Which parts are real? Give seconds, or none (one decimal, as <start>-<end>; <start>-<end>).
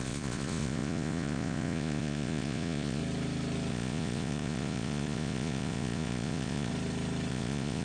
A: 3.0-3.7; 6.7-7.3